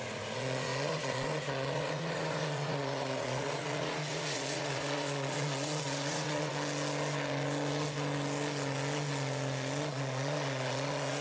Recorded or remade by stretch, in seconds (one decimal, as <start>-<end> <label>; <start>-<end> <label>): 0.0-6.5 remade; 6.5-9.9 recorded; 9.9-11.2 remade